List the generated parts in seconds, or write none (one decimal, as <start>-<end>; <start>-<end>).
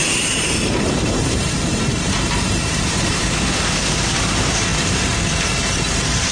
0.0-3.3; 4.7-6.3